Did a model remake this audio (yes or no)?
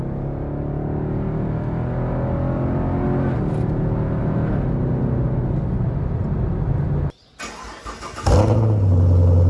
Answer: no